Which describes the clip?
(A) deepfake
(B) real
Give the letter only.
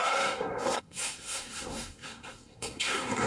A